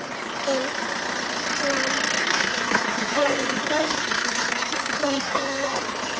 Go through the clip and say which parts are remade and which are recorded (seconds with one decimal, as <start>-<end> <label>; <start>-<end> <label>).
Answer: 0.0-2.2 recorded; 2.2-5.8 remade; 5.8-6.2 recorded